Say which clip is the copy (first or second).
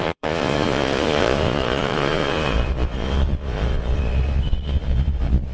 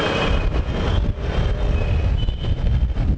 first